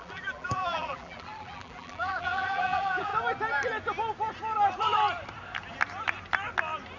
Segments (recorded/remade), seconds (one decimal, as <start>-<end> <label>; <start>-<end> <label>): 0.0-3.1 remade; 3.1-7.0 recorded